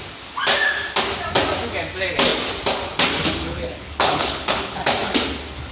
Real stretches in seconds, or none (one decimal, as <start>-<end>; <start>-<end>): 0.0-3.5; 4.8-5.7